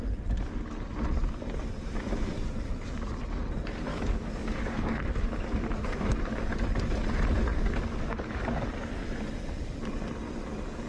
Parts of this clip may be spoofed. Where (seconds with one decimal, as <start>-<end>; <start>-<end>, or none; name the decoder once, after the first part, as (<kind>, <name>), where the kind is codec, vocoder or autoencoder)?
3.9-6.5 (codec, DAC); 7.5-8.7